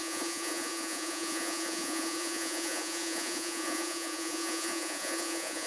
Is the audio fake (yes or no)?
yes